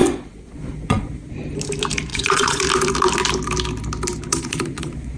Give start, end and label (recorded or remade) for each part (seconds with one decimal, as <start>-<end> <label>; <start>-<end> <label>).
0.0-1.3 remade; 1.3-2.1 recorded; 2.1-2.6 remade; 2.6-4.3 recorded; 4.3-5.2 remade